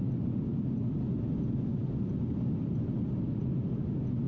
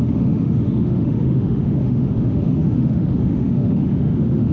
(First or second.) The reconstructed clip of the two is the second